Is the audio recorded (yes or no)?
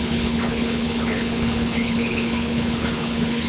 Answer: no